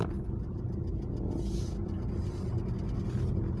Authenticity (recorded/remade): recorded